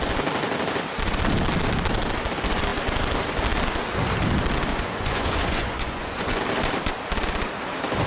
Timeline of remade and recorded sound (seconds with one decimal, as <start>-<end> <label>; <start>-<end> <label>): 0.0-4.7 recorded; 4.7-6.4 remade; 6.4-8.1 recorded